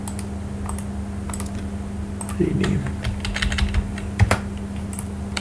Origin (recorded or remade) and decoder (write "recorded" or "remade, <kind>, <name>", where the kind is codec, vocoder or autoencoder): recorded